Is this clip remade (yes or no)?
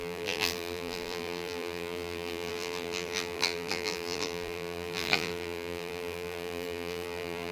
yes